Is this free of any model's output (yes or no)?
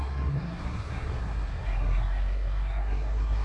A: no